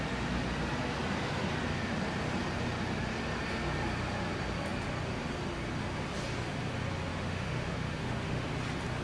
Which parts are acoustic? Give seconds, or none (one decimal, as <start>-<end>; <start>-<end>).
0.0-7.1; 8.5-9.0

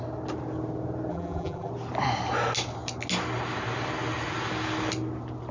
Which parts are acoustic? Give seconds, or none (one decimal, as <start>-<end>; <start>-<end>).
0.0-1.1; 1.7-5.5

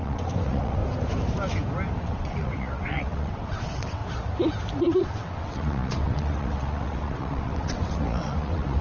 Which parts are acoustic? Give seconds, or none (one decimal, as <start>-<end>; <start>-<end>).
0.8-2.0; 4.0-5.0

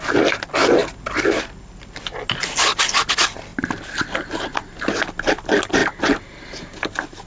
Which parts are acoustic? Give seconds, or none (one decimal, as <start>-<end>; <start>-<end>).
0.0-7.3

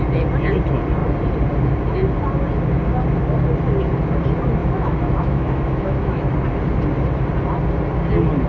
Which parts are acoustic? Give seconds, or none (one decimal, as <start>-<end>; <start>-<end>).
0.0-4.6; 6.3-8.5

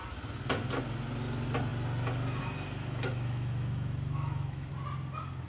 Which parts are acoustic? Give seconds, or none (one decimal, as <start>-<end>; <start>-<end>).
0.0-2.8; 4.7-5.5

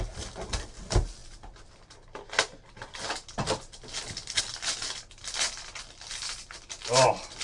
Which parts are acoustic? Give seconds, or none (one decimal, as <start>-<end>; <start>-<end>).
0.0-7.4